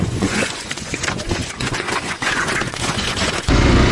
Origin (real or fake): fake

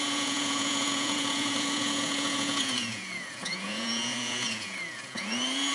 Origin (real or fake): fake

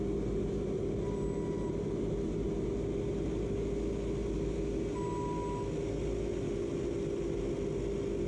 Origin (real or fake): real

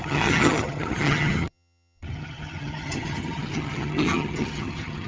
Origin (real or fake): fake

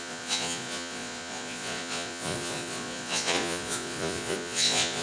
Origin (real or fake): fake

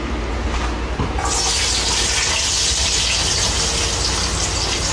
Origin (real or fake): real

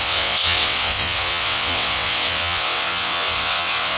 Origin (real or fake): fake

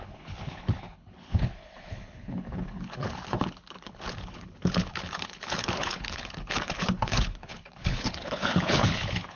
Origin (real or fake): fake